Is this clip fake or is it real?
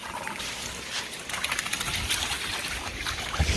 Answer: real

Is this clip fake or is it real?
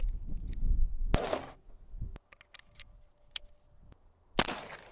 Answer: real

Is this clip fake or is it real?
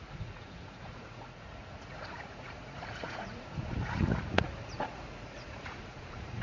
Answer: fake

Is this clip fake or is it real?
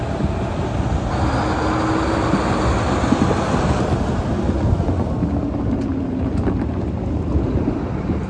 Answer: real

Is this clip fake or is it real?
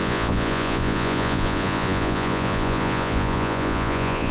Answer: fake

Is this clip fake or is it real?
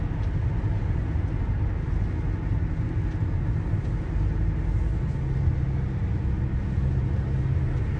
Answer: real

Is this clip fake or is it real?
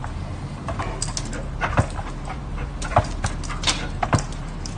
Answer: real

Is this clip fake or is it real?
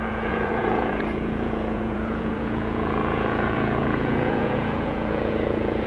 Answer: fake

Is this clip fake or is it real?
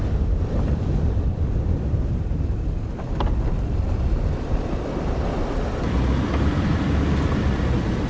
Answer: real